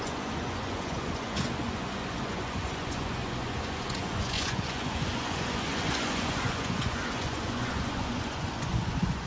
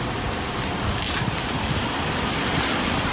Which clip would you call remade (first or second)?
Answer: first